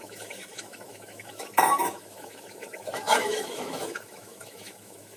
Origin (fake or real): fake